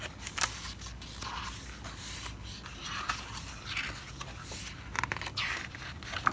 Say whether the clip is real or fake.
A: real